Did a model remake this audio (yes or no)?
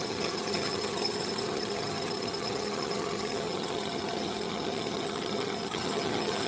yes